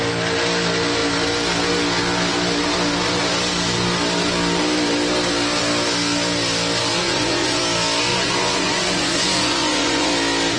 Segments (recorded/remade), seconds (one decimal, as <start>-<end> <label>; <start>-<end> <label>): 0.0-7.0 recorded; 7.0-7.6 remade; 7.6-8.1 recorded; 8.1-10.1 remade; 10.1-10.6 recorded